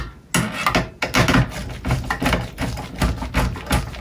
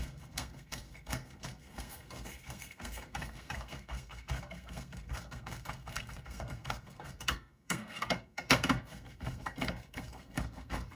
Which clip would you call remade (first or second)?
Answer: second